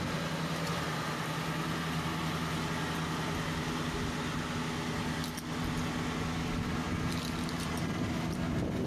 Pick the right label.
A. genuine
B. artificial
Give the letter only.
A